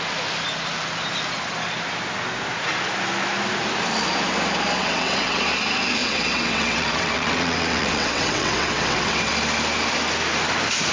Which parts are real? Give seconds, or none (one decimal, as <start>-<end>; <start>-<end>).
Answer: 0.0-4.8; 5.4-6.0; 9.3-10.9